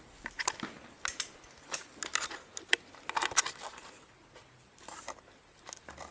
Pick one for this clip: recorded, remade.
recorded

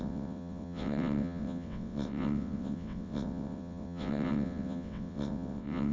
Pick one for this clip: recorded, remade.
remade